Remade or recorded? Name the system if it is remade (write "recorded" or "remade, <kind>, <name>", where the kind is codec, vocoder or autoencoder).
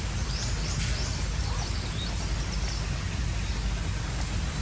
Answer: recorded